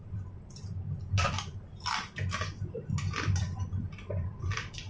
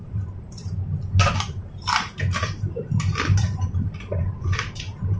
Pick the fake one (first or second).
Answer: second